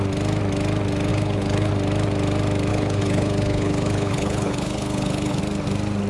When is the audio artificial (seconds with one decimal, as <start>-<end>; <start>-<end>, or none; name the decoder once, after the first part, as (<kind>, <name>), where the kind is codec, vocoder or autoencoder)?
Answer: 1.1-1.7 (codec, HILCodec); 2.7-5.4